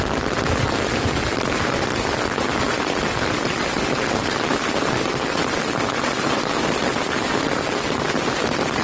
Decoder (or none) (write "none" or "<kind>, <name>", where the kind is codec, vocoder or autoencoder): none